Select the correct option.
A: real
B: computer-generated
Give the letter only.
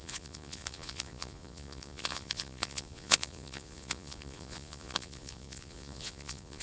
B